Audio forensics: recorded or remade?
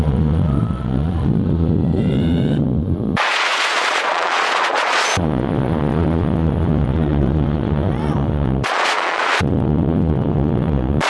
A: remade